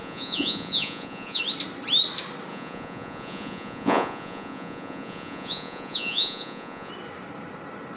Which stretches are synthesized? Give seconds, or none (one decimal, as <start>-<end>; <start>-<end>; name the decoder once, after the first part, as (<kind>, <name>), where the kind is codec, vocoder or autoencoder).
0.0-1.4 (vocoder, Vocos); 2.5-6.9